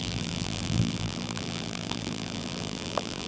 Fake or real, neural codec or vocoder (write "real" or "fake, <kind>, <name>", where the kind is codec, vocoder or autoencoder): fake, vocoder, BigVGAN v2